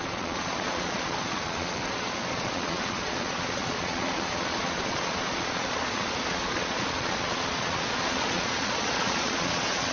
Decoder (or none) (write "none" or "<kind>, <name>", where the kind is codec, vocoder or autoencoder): vocoder, Vocos